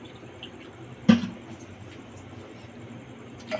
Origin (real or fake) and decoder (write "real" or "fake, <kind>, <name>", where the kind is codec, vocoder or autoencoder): real